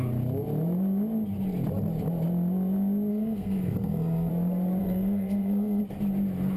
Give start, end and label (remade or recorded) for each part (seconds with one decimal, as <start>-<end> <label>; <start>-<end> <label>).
0.0-3.1 recorded; 3.1-4.3 remade; 4.3-4.8 recorded; 4.8-5.8 remade; 5.8-6.6 recorded

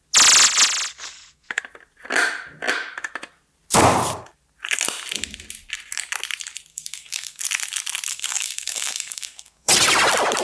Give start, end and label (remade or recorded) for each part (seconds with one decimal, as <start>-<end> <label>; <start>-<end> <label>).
0.0-0.9 recorded; 0.9-1.6 remade; 1.6-6.7 recorded; 6.7-7.4 remade; 7.4-8.1 recorded; 8.1-9.7 remade; 9.7-10.4 recorded

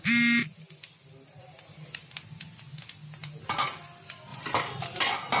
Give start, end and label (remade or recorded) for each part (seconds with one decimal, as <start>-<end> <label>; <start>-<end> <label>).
0.0-5.4 recorded

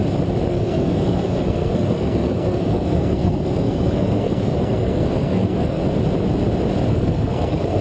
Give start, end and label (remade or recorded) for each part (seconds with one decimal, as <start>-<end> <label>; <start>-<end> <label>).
0.0-0.5 recorded; 0.5-5.8 remade; 5.8-6.9 recorded; 6.9-7.8 remade

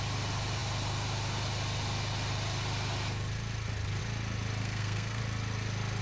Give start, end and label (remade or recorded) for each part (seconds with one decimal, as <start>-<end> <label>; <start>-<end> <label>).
0.0-4.6 recorded; 4.6-5.2 remade; 5.2-6.0 recorded

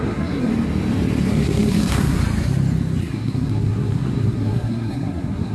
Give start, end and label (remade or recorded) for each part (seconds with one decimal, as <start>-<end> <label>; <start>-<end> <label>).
0.0-0.5 remade; 0.5-1.3 recorded; 1.3-2.2 remade; 2.2-3.0 recorded; 3.0-5.5 remade

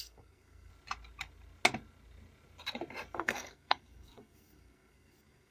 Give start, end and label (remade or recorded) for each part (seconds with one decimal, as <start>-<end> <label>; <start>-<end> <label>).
0.0-0.7 remade; 0.7-3.2 recorded; 3.2-5.5 remade